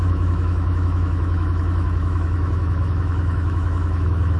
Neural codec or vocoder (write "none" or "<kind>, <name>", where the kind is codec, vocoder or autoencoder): autoencoder, DAC-VAE